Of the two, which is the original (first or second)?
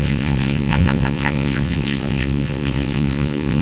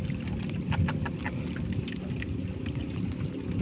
second